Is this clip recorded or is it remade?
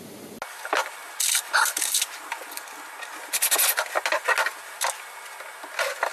recorded